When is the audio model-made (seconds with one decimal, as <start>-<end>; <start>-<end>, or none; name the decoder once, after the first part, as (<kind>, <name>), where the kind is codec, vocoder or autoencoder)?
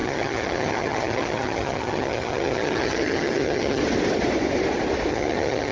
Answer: 0.0-3.8 (vocoder, HiFi-GAN); 5.1-5.7